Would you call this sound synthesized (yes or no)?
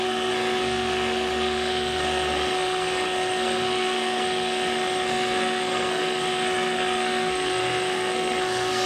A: yes